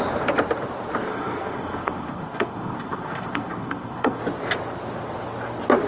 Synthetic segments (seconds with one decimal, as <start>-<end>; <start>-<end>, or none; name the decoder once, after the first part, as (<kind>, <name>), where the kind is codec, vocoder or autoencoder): 1.1-4.2 (codec, SNAC)